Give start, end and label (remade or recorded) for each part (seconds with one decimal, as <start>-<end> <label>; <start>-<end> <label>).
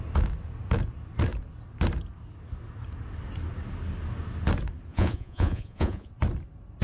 0.0-4.9 recorded; 4.9-6.1 remade; 6.1-6.8 recorded